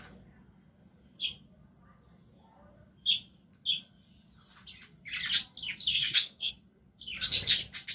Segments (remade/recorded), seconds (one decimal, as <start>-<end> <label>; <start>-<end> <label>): 0.0-5.9 recorded; 5.9-6.5 remade; 6.5-7.9 recorded